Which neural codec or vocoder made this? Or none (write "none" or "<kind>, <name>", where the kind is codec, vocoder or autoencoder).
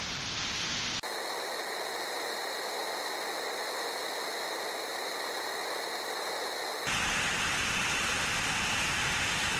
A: none